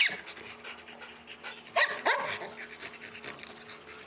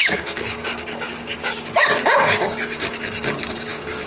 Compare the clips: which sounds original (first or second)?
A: first